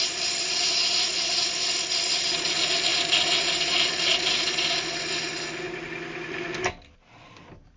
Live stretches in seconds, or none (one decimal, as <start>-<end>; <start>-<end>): 0.0-2.9; 4.5-7.8